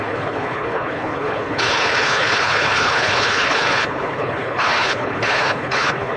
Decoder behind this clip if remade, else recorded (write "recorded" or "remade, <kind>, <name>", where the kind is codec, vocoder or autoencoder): remade, codec, HILCodec